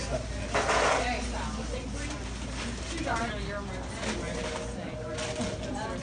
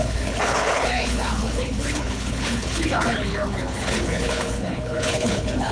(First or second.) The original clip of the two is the first